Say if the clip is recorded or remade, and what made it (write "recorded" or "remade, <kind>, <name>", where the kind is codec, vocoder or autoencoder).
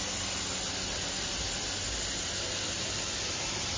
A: recorded